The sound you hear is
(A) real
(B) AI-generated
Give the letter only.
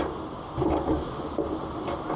A